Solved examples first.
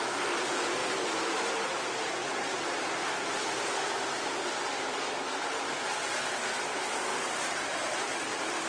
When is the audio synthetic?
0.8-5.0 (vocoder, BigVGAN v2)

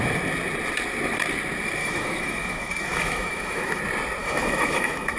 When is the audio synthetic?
1.8-3.8 (autoencoder, DAC-VAE); 4.2-5.2

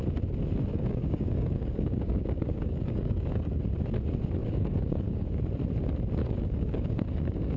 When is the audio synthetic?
0.7-3.6 (codec, DAC); 4.4-5.4; 6.2-7.6

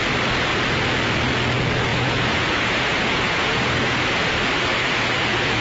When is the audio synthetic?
1.9-4.3 (vocoder, Vocos); 4.7-5.6